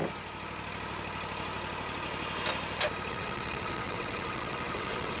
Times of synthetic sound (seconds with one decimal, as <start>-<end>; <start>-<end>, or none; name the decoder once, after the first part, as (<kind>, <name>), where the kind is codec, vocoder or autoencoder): 3.1-5.2 (vocoder, WaveNeXt)